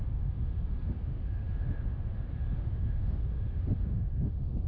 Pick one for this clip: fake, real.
fake